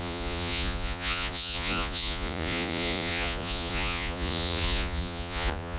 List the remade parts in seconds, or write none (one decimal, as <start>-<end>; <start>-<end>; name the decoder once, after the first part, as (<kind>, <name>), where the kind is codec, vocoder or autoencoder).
0.0-5.8 (vocoder, Vocos)